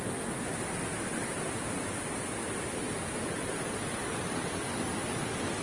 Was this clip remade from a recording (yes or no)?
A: no